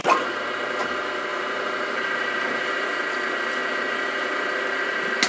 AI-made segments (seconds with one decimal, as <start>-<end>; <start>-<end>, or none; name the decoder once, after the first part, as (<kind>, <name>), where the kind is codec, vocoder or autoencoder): 0.0-0.8 (vocoder, BigVGAN v2); 1.3-2.7